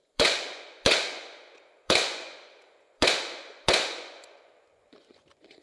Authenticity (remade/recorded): remade